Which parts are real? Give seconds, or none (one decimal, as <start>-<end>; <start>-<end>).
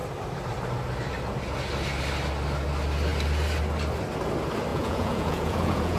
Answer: 0.0-4.7